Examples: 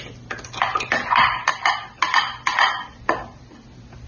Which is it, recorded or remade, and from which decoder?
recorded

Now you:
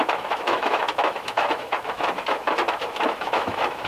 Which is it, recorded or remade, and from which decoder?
remade, autoencoder, DAC-VAE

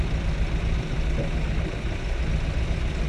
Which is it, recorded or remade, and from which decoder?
recorded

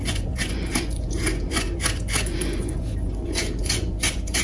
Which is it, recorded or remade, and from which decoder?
remade, vocoder, Vocos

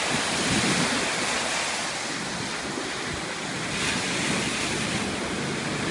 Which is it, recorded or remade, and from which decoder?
recorded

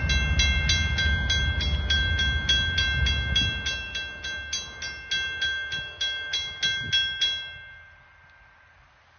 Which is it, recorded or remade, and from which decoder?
recorded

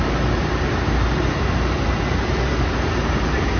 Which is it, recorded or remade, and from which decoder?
remade, vocoder, BigVGAN v2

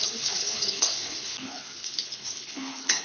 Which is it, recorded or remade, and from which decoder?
remade, codec, HILCodec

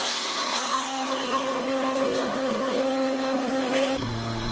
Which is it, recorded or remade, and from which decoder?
remade, codec, SNAC